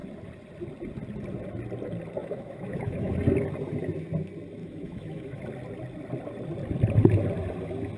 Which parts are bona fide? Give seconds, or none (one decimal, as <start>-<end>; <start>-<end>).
0.0-2.2; 3.1-4.6; 5.4-8.0